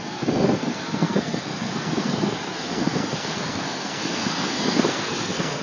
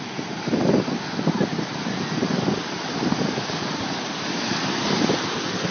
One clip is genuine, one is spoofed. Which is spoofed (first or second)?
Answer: first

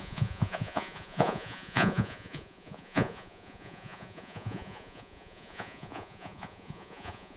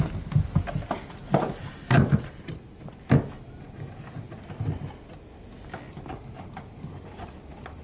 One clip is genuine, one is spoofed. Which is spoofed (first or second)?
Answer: first